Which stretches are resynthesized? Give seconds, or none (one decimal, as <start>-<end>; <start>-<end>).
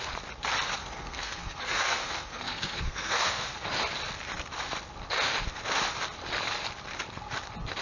0.8-3.5